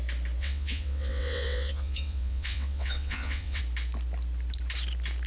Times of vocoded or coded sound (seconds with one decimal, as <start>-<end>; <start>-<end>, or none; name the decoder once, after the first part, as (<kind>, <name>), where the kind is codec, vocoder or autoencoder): 0.4-3.6 (vocoder, WaveNeXt)